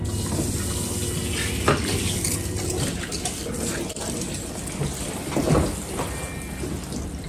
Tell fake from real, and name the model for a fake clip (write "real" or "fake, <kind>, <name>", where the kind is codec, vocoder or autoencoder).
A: real